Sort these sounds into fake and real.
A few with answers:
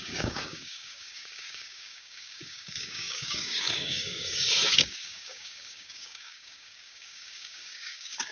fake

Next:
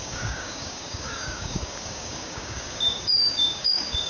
fake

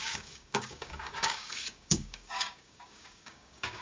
fake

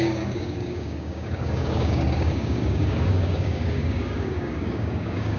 fake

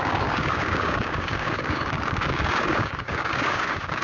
fake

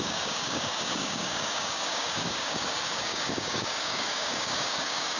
fake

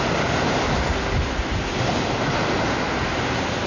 real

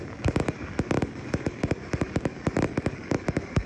fake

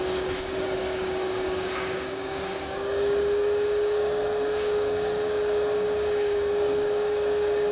fake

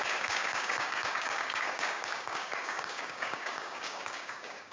fake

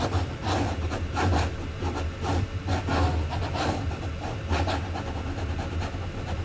real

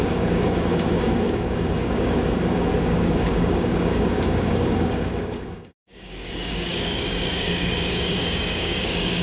fake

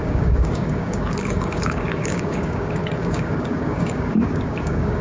fake